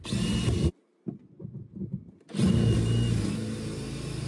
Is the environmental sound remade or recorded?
recorded